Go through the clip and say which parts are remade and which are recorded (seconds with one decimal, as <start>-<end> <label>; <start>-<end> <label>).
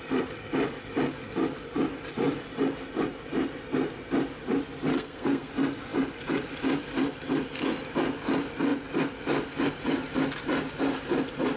0.0-4.9 recorded; 4.9-5.5 remade; 5.5-11.6 recorded